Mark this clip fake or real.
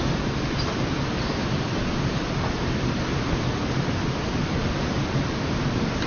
real